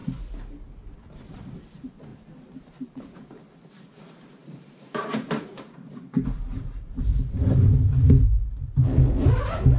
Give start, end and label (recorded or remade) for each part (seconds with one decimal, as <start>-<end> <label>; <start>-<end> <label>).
0.0-2.1 recorded; 2.1-3.4 remade; 3.4-4.4 recorded; 4.4-7.3 remade; 7.3-9.8 recorded